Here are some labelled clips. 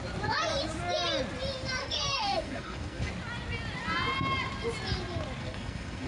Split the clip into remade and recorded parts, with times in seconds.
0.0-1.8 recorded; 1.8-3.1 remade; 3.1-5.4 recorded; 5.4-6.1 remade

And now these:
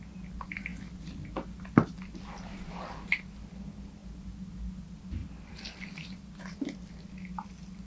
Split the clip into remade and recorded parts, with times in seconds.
0.0-5.2 recorded; 5.2-7.0 remade; 7.0-7.9 recorded

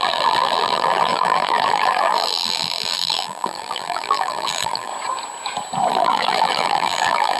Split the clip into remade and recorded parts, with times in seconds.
0.0-4.9 remade; 4.9-5.9 recorded; 5.9-7.4 remade

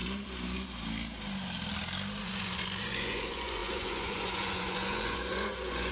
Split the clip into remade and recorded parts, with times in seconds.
0.0-2.2 recorded; 2.2-5.9 remade